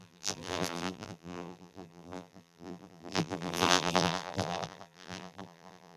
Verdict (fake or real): fake